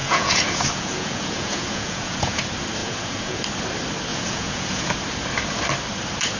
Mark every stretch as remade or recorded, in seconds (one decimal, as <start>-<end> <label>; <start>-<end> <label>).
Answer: 0.0-2.4 remade; 2.4-2.8 recorded; 2.8-3.4 remade; 3.4-4.1 recorded; 4.1-4.9 remade; 4.9-6.4 recorded